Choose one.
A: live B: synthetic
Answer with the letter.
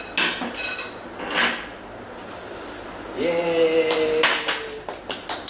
A